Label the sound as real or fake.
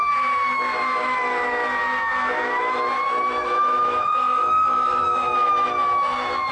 fake